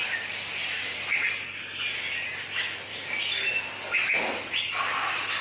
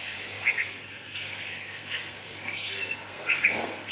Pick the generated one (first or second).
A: second